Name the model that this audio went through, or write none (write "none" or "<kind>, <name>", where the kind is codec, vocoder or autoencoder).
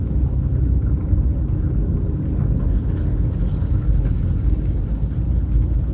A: none